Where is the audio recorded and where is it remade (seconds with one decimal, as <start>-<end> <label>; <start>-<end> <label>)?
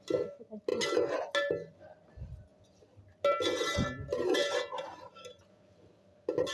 0.0-6.5 recorded